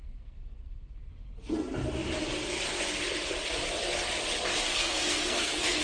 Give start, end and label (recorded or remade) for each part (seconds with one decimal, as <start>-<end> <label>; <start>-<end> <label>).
0.0-1.1 remade; 1.1-4.7 recorded; 4.7-5.8 remade